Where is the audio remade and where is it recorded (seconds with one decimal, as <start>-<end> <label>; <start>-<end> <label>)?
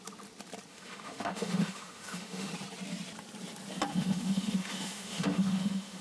0.0-0.7 recorded; 0.7-2.5 remade; 2.5-3.9 recorded; 3.9-6.0 remade